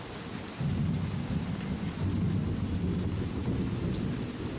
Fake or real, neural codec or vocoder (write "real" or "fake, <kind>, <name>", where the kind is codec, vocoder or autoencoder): real